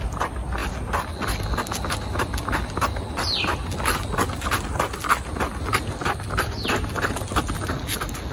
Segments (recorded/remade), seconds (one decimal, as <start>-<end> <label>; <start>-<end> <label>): 0.0-8.3 recorded